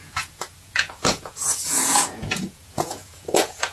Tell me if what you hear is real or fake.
fake